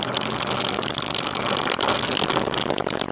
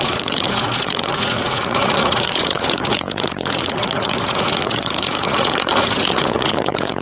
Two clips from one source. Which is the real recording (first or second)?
first